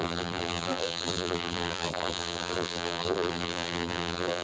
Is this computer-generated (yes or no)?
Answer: yes